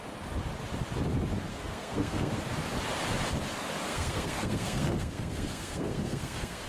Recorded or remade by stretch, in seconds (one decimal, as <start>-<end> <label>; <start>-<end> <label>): 0.0-1.5 recorded; 1.5-2.4 remade; 2.4-3.9 recorded; 3.9-6.7 remade